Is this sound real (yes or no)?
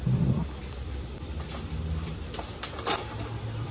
no